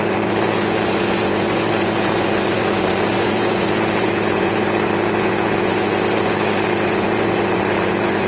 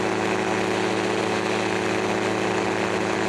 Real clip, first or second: second